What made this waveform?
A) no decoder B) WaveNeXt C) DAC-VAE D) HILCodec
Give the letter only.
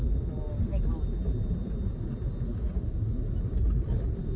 A